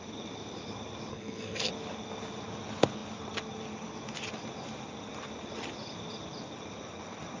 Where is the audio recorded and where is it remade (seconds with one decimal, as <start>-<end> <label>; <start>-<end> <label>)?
0.0-1.1 recorded; 1.1-1.7 remade; 1.7-7.4 recorded